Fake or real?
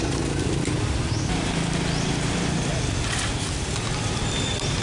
real